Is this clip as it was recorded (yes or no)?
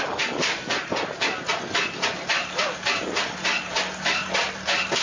yes